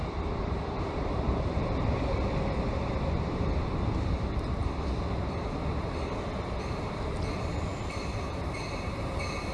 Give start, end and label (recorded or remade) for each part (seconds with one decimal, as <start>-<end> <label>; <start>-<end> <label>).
0.0-4.6 remade; 4.6-6.8 recorded; 6.8-9.5 remade